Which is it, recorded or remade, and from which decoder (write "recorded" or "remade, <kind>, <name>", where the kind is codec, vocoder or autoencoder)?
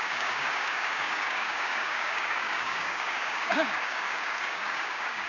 remade, codec, DAC